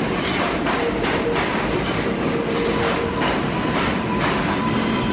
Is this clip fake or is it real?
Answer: real